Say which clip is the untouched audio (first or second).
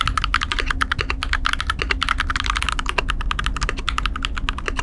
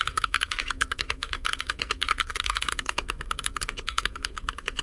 first